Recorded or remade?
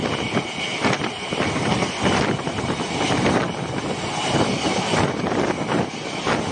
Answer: recorded